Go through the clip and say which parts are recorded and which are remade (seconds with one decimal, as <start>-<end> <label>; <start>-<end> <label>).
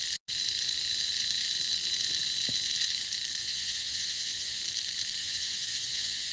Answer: 0.0-3.4 recorded; 3.4-4.6 remade; 4.6-5.2 recorded; 5.2-6.3 remade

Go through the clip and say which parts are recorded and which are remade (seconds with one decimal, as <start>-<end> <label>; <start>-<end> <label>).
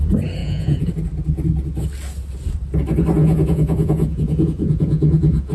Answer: 0.0-0.4 recorded; 0.4-0.9 remade; 0.9-3.2 recorded; 3.2-5.5 remade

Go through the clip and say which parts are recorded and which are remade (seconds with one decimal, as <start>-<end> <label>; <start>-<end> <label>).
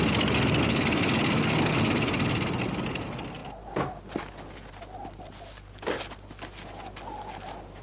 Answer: 0.0-7.8 recorded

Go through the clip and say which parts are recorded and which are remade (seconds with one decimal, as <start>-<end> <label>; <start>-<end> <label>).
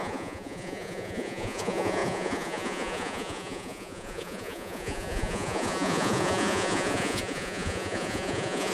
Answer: 0.0-8.7 remade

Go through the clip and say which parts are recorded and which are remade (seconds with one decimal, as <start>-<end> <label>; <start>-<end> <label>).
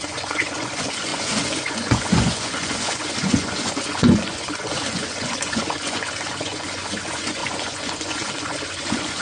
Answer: 0.0-9.2 remade